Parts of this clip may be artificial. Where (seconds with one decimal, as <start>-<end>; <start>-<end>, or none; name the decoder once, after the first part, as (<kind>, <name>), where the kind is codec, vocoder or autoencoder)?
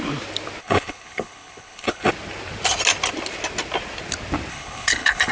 0.6-2.1 (codec, HILCodec); 4.5-5.3